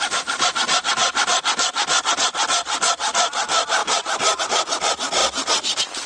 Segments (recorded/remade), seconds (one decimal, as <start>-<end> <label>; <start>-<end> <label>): 0.0-6.1 recorded